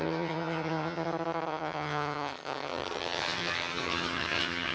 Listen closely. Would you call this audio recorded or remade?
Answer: remade